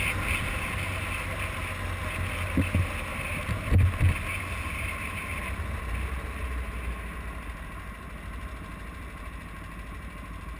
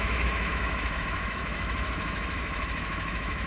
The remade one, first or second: second